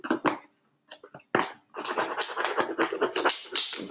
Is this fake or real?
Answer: real